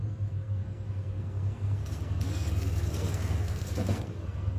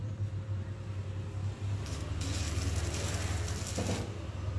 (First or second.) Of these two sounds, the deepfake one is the first